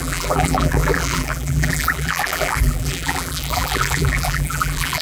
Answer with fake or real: fake